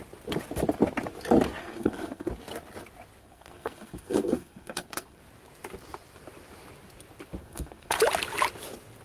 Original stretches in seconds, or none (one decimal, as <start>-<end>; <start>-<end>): 0.0-1.6; 2.3-3.2; 5.2-7.4; 8.0-9.0